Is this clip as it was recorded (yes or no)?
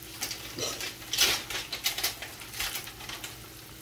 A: yes